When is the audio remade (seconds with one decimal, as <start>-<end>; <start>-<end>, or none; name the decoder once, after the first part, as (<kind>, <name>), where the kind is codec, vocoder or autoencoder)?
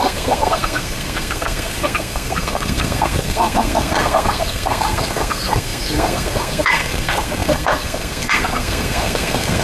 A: 0.0-9.6 (codec, SNAC)